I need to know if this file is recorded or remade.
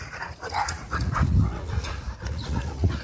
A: remade